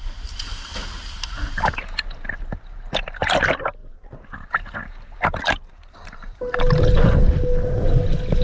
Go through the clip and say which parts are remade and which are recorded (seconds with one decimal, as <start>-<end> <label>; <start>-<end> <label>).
0.0-8.4 recorded